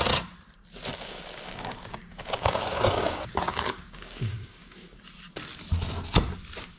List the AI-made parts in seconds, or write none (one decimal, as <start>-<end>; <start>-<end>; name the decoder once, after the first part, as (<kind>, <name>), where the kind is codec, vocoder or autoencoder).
0.9-5.0 (codec, DAC)